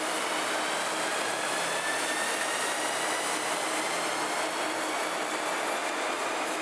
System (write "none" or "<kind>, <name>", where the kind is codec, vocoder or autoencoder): none